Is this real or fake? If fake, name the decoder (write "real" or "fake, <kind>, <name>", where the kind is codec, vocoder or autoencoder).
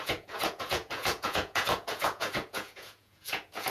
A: fake, vocoder, Vocos